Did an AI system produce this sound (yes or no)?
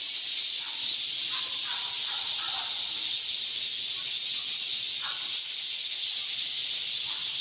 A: no